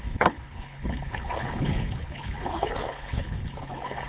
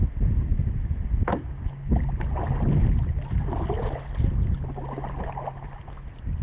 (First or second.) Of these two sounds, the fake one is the first